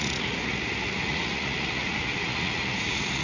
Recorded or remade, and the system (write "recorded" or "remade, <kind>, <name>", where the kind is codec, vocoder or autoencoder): remade, vocoder, Vocos